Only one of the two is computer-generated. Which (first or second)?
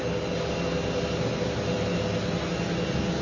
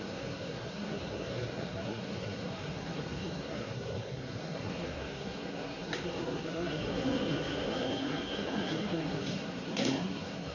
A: second